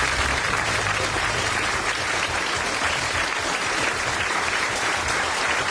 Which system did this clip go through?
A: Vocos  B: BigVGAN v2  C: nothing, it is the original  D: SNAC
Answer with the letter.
B